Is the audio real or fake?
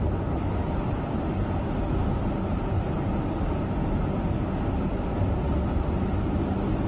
real